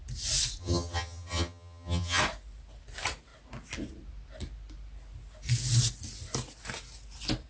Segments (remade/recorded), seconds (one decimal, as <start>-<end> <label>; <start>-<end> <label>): 0.0-0.6 recorded; 0.6-2.2 remade; 2.2-7.5 recorded